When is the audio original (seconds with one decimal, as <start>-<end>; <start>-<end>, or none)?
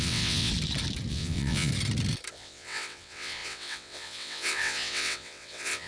0.5-1.1; 1.7-2.3